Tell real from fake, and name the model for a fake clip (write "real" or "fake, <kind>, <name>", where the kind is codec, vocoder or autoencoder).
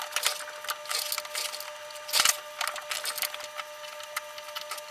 real